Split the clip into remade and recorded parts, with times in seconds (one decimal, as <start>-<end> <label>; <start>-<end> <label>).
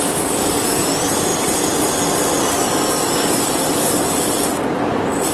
0.0-5.3 recorded